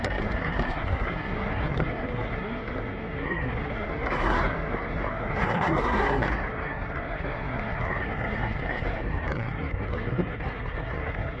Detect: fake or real fake